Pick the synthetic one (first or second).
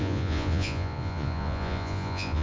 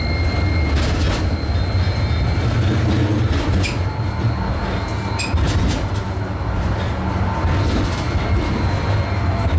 first